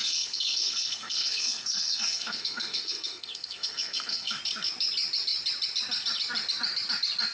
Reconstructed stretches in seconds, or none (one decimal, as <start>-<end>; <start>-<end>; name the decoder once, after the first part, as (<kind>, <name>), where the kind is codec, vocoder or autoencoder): 0.0-4.4 (codec, SNAC)